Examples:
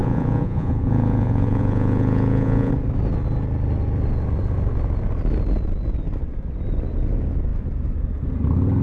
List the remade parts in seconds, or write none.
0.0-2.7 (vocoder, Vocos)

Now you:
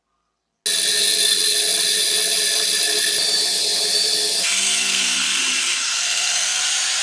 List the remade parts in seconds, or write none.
4.4-5.4 (codec, SNAC); 5.9-6.6

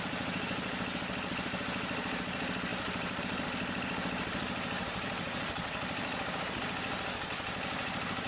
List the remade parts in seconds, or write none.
4.8-6.6 (vocoder, BigVGAN v2)

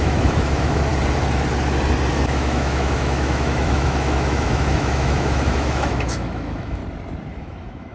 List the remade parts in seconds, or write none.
0.0-0.9 (autoencoder, DAC-VAE); 2.1-6.8; 7.3-7.9

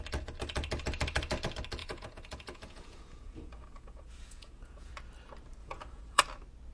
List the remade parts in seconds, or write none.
1.8-4.9 (vocoder, Vocos); 5.6-6.2